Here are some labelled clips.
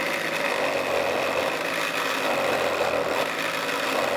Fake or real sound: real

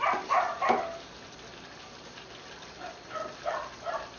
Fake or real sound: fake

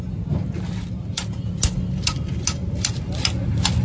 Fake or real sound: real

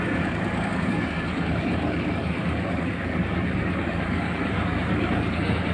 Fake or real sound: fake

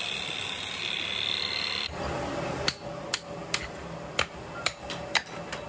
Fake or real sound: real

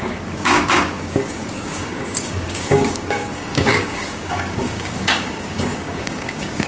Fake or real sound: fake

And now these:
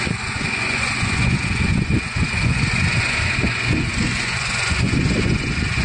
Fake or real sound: fake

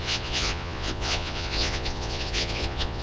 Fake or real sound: fake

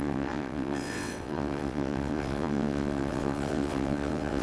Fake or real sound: fake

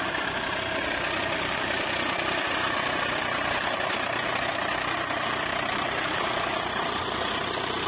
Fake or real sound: fake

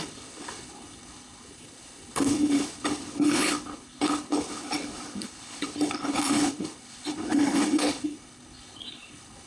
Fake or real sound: fake